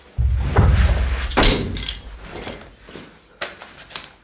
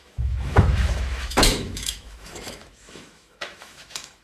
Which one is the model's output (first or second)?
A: second